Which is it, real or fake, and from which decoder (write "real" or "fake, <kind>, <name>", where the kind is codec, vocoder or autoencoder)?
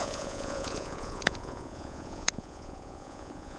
fake, vocoder, Vocos